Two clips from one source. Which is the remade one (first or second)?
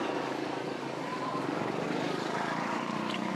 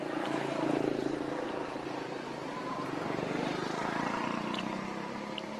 first